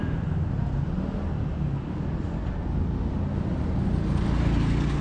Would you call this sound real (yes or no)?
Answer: yes